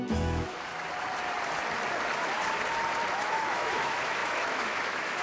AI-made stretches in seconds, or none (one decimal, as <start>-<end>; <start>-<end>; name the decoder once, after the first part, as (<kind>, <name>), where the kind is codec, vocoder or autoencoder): 0.0-0.7 (autoencoder, DAC-VAE); 3.1-5.2